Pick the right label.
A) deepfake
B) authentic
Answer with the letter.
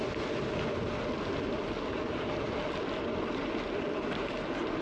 B